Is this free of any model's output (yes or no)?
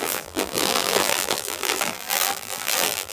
no